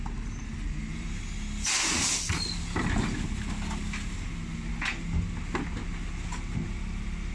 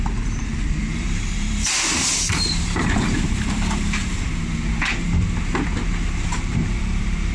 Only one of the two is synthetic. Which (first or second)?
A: second